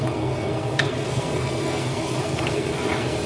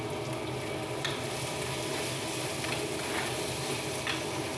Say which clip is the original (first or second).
second